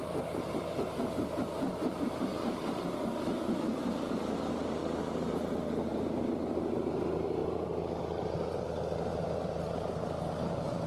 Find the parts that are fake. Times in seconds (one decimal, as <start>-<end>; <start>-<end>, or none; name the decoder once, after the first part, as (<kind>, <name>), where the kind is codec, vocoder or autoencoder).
0.0-10.9 (vocoder, BigVGAN v2)